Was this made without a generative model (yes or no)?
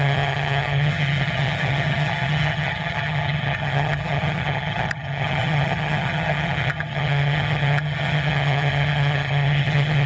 no